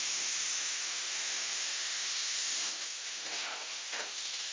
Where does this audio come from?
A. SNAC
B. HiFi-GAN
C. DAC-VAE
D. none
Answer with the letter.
C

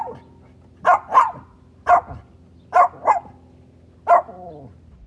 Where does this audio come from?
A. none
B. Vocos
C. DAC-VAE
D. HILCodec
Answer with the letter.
A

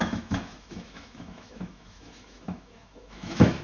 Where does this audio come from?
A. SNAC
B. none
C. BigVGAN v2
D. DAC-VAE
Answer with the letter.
D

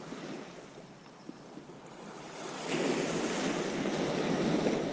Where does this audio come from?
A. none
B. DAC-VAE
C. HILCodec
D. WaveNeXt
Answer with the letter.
A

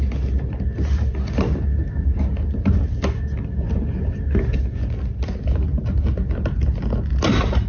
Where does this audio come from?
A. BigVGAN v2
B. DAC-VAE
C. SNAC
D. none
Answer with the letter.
D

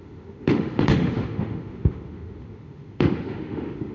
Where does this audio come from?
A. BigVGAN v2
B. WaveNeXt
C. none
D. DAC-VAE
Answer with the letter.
D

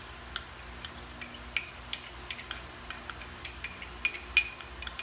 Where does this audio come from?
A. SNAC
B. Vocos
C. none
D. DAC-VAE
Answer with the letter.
C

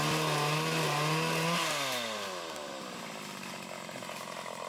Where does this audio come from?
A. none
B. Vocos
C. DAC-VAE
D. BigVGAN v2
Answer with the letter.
A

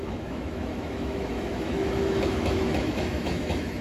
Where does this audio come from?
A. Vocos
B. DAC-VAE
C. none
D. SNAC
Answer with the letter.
B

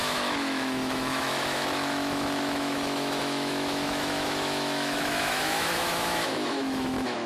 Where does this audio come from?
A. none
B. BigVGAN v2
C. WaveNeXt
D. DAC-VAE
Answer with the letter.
D